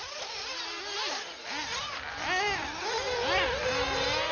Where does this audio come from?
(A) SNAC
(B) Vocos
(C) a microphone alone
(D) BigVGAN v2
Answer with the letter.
C